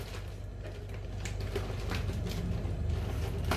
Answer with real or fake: real